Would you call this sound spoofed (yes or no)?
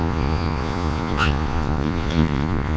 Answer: yes